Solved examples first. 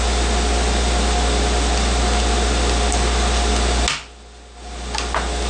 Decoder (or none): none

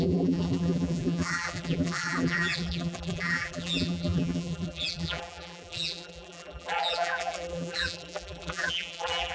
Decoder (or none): vocoder, BigVGAN v2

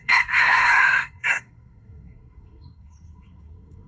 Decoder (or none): codec, SNAC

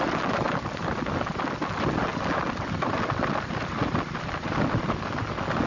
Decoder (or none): none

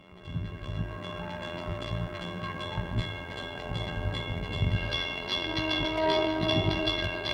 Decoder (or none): vocoder, BigVGAN v2